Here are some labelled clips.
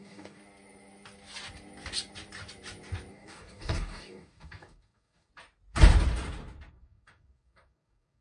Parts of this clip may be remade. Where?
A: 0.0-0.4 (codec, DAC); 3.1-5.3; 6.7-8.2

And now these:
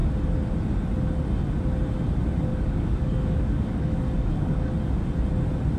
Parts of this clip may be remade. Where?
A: 2.5-4.7 (codec, DAC)